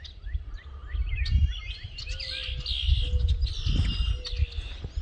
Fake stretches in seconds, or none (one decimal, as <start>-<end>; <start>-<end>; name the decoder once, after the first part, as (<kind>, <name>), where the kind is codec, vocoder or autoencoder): none